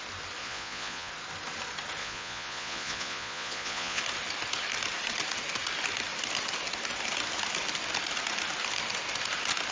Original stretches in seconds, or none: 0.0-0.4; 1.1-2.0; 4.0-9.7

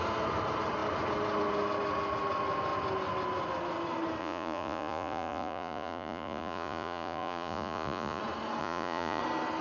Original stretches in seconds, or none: 0.0-4.2; 8.2-8.6; 9.2-9.6

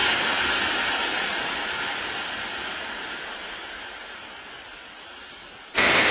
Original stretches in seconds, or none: 0.0-6.1

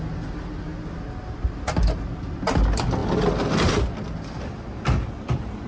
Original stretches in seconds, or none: 0.0-5.7

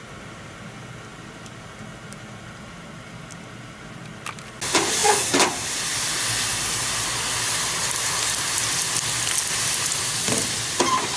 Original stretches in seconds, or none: 0.0-11.2

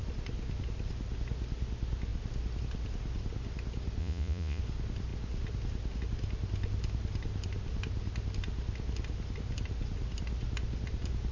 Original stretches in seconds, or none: 0.0-4.0; 4.6-11.3

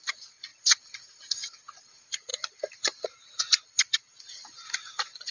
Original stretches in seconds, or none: 2.3-3.9

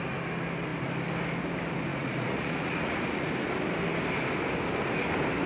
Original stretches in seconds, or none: 0.0-1.9; 3.3-5.5